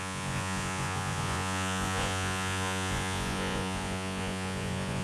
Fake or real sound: fake